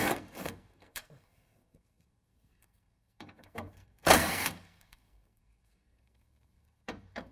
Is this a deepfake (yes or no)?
yes